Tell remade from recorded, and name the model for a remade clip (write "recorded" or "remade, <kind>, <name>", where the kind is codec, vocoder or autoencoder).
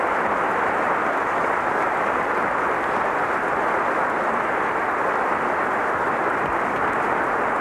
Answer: remade, vocoder, BigVGAN v2